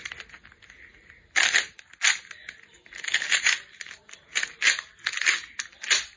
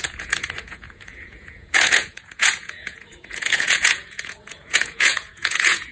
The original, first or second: first